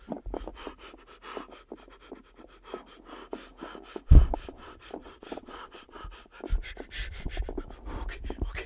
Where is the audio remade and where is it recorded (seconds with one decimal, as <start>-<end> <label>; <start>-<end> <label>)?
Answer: 0.0-5.0 recorded; 5.0-6.0 remade; 6.0-8.7 recorded